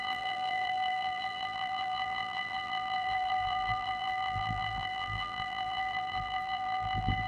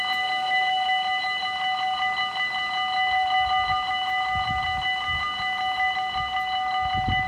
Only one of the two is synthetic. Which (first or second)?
first